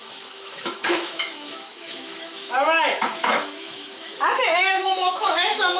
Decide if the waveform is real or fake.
fake